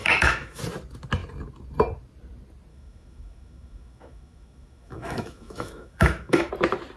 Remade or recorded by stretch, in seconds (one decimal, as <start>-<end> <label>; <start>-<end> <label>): 0.0-0.6 remade; 0.6-2.7 recorded; 2.7-6.5 remade; 6.5-7.0 recorded